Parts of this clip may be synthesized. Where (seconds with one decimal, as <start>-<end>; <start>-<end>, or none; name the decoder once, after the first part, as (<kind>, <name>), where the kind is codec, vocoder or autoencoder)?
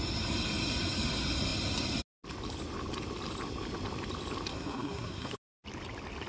4.5-5.3 (codec, SNAC)